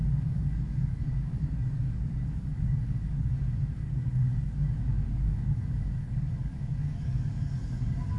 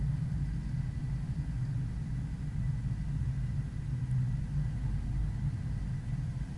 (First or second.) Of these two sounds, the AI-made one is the first